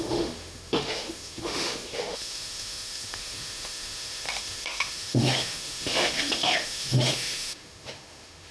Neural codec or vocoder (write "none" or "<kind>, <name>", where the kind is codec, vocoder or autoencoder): autoencoder, DAC-VAE